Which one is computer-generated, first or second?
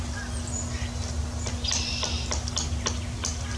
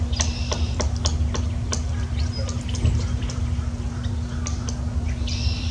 second